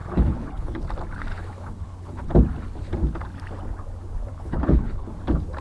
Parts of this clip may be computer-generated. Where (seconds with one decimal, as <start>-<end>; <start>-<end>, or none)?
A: 0.0-0.8; 1.3-2.3; 4.3-5.1